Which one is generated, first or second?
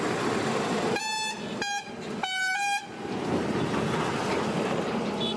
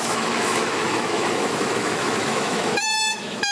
second